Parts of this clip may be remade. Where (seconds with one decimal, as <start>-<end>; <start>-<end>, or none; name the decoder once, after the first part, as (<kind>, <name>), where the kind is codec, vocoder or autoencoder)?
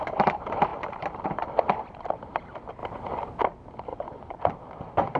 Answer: 3.9-4.4 (vocoder, Vocos)